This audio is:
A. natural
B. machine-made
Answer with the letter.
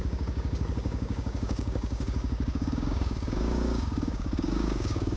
B